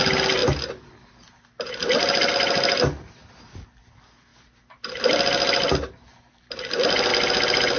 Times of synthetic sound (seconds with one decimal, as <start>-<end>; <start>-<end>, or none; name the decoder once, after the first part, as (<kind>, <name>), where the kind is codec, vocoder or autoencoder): none